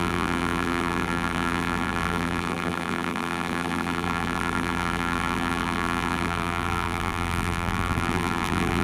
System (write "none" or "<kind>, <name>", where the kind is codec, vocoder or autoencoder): vocoder, BigVGAN v2